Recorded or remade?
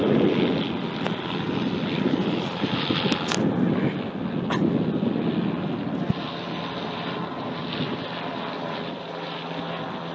recorded